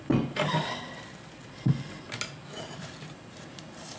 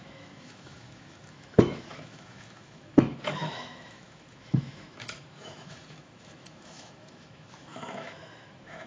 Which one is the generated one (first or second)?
second